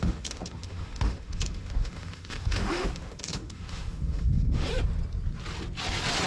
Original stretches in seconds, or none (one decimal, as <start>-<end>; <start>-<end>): 4.7-6.3